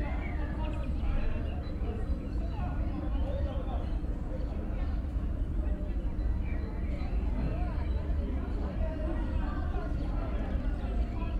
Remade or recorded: recorded